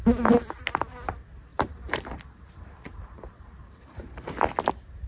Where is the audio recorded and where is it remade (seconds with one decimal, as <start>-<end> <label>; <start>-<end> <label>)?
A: 0.0-1.5 recorded; 1.5-4.3 remade; 4.3-5.1 recorded